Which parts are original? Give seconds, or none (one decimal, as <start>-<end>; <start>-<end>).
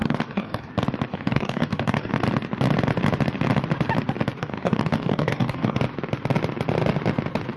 0.7-1.1; 2.2-4.4; 5.8-7.6